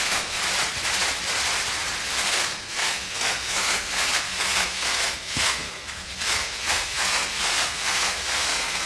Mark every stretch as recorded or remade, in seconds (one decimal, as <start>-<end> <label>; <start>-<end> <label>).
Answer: 0.0-0.4 remade; 0.4-2.0 recorded; 2.0-8.9 remade